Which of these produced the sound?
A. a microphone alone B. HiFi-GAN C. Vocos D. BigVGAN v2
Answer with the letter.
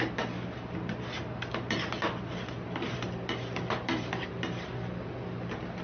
A